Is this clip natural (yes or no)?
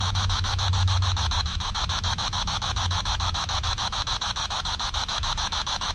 no